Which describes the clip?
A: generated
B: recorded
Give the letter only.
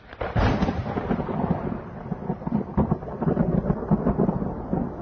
B